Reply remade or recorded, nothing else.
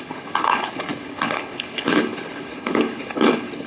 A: remade